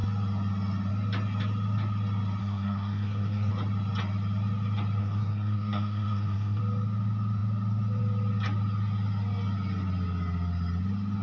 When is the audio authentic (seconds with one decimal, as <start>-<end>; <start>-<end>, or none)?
0.0-2.4; 3.5-5.0; 6.6-11.2